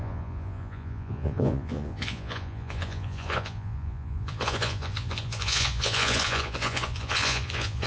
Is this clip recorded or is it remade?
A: remade